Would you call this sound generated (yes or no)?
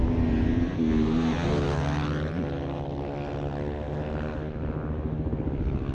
no